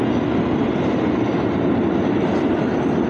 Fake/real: real